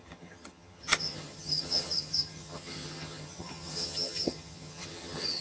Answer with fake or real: fake